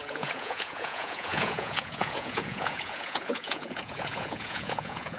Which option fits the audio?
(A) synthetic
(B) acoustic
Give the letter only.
A